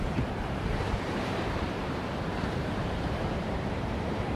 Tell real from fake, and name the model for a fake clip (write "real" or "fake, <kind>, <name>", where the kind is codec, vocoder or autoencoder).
fake, vocoder, BigVGAN v2